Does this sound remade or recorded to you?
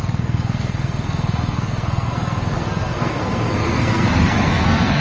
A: remade